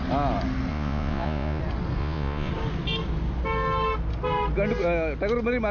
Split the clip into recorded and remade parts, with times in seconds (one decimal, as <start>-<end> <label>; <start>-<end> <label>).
0.0-0.7 recorded; 0.7-1.6 remade; 1.6-2.0 recorded; 2.0-2.5 remade; 2.5-5.7 recorded